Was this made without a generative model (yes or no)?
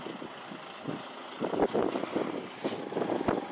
yes